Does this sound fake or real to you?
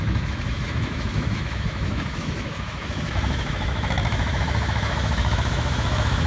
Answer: fake